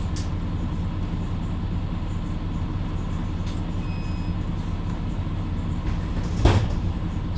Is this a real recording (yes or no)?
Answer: yes